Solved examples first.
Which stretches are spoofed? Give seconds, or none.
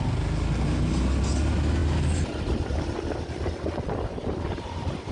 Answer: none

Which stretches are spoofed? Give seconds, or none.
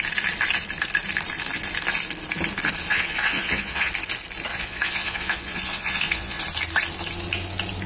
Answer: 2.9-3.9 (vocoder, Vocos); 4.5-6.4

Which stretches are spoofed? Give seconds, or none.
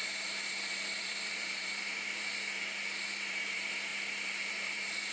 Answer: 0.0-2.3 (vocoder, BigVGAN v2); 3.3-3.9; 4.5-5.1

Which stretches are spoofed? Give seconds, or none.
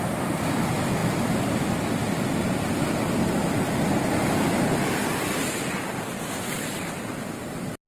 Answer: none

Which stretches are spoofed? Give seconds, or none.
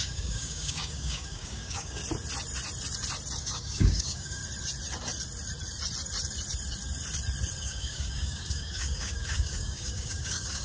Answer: 0.0-2.0 (codec, DAC); 3.4-4.4; 7.6-10.6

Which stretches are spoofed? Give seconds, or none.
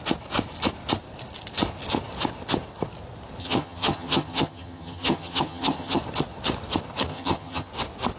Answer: 3.4-6.0 (vocoder, HiFi-GAN); 7.1-7.7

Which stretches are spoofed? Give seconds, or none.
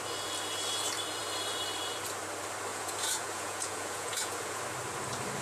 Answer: 2.7-4.6 (vocoder, Vocos)